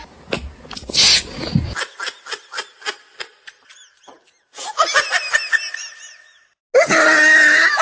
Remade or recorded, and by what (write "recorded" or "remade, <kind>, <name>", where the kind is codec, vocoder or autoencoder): recorded